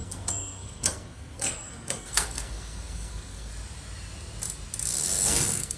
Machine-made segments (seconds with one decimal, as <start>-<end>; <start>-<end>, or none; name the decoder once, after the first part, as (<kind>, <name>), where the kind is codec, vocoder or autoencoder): 0.0-3.5 (codec, SNAC); 4.9-5.8